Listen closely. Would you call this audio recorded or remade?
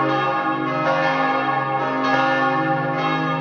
recorded